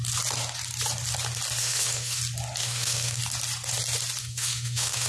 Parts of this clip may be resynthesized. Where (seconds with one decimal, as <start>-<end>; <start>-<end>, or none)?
1.6-2.2; 2.6-3.2; 4.2-5.1